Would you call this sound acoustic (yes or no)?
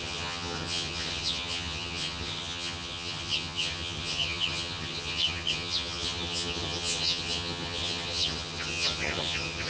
no